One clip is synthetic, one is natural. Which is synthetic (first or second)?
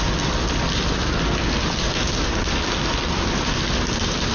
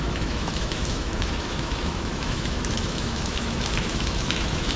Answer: second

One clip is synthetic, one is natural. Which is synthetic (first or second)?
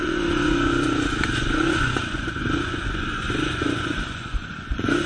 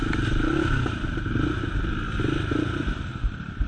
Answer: first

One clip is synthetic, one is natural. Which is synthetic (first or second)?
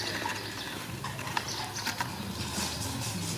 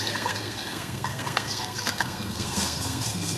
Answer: second